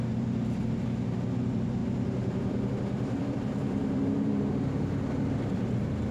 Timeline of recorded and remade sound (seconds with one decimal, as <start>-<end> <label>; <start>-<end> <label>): 0.0-6.1 remade